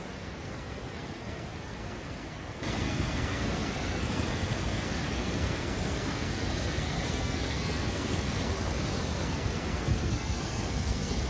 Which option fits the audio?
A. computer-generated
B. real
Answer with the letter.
A